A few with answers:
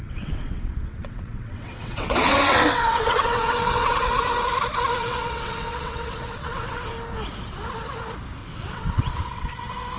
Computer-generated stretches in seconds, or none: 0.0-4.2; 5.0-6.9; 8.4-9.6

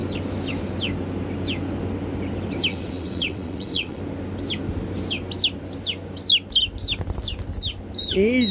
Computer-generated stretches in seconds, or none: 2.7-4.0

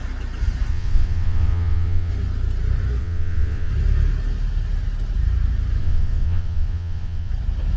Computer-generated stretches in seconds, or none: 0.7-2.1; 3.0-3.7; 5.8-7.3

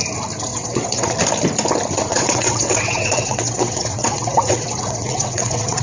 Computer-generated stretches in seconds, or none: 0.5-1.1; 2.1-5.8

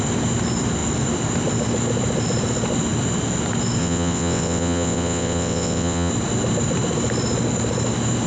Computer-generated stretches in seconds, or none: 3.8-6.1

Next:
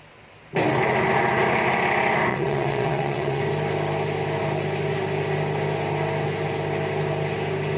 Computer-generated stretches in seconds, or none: 2.3-3.4

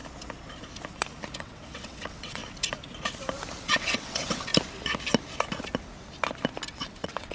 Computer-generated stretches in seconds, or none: 1.4-2.4; 3.6-4.5; 6.7-7.3